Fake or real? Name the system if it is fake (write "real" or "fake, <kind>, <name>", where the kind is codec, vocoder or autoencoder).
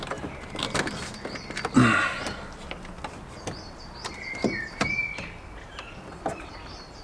real